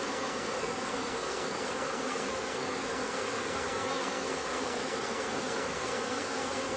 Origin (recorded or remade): remade